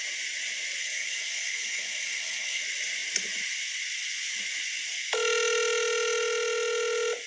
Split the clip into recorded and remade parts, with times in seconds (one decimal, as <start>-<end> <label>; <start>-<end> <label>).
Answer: 0.0-0.8 recorded; 0.8-2.6 remade; 2.6-7.3 recorded